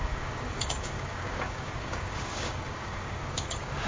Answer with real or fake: fake